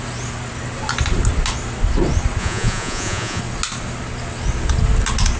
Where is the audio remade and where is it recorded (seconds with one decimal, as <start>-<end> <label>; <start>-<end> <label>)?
0.0-2.4 recorded; 2.4-3.4 remade; 3.4-5.4 recorded